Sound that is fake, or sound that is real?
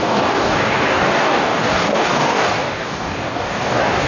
fake